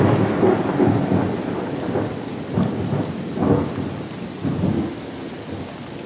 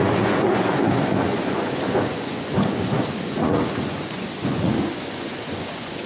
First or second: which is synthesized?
second